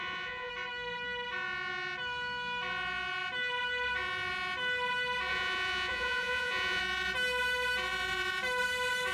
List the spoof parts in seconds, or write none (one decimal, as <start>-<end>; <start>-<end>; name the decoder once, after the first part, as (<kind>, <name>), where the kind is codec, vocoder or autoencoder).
0.0-0.5 (vocoder, Vocos); 5.3-6.8